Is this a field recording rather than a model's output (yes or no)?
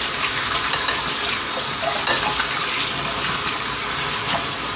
yes